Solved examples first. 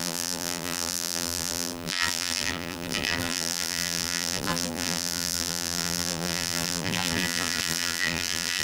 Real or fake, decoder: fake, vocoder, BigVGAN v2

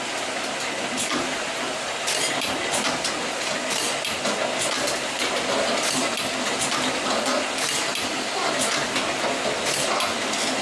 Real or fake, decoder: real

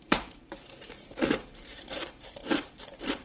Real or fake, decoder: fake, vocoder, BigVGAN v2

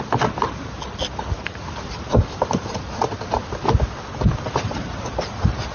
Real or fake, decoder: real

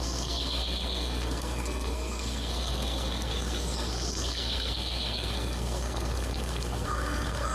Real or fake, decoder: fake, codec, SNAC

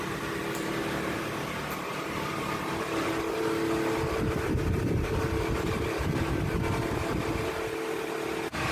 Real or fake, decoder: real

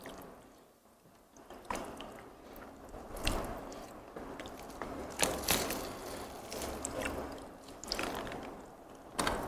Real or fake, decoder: real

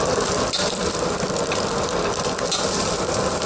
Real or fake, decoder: fake, vocoder, BigVGAN v2